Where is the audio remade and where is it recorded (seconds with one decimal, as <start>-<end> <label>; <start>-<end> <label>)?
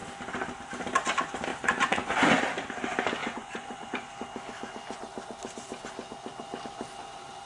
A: 0.0-1.5 recorded; 1.5-2.4 remade; 2.4-3.2 recorded; 3.2-4.1 remade; 4.1-7.5 recorded